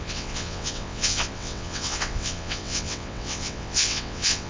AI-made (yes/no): yes